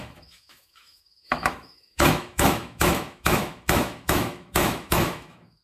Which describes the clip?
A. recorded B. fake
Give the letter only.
B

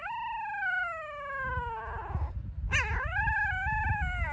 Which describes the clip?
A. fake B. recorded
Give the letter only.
B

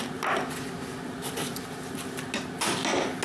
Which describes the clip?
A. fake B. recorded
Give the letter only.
B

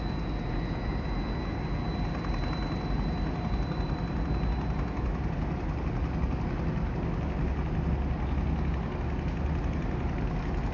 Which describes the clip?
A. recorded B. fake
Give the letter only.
A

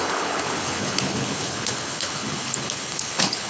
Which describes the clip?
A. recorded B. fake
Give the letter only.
B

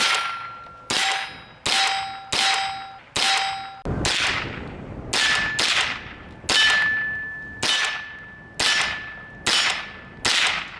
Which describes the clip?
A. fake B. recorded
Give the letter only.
B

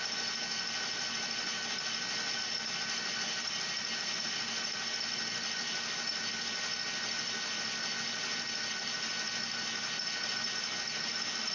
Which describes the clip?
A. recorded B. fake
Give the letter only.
A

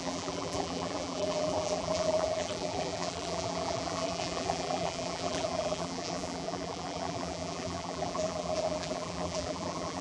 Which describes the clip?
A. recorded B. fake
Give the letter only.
B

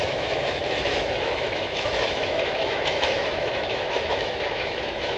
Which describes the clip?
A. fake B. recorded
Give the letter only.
A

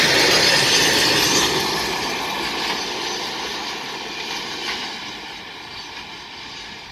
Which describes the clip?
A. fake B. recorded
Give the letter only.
B